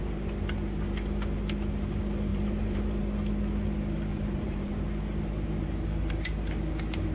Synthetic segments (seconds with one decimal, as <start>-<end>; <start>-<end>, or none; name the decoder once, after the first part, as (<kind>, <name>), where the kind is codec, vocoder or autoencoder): 2.3-3.0 (vocoder, BigVGAN v2); 4.1-4.7